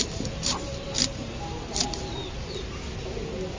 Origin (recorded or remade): recorded